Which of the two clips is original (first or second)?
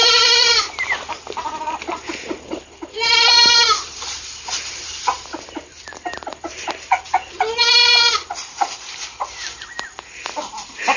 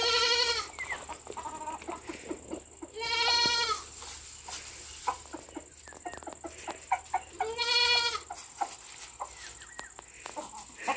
second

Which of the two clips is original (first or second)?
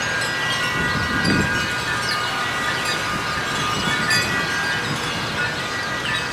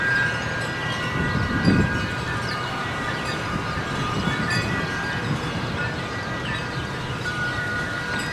first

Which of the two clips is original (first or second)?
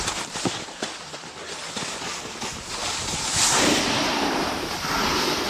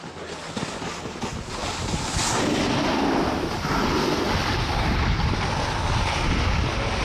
second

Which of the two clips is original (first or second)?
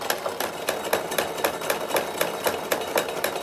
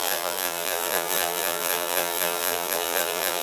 first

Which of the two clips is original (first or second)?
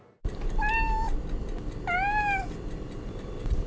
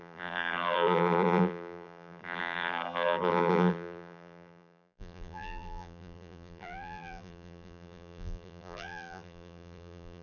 first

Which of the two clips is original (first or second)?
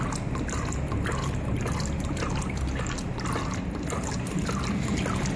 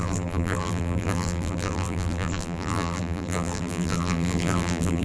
first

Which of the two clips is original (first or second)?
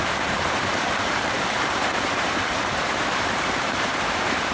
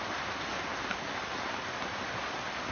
second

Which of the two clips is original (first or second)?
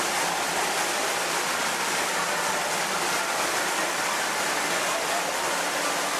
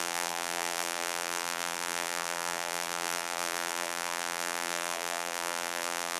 first